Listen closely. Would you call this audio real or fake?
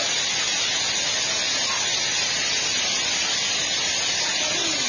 real